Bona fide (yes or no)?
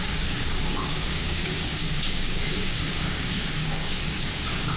no